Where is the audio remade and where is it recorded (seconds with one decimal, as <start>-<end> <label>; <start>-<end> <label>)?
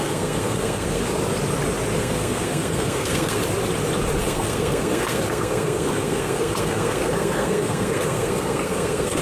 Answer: 0.0-1.1 remade; 1.1-2.0 recorded; 2.0-3.4 remade; 3.4-4.2 recorded; 4.2-9.2 remade